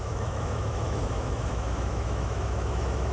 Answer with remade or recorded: remade